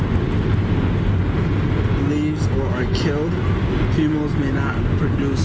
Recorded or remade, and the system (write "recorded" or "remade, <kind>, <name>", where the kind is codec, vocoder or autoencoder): recorded